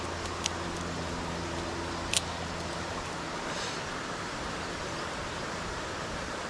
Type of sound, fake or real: real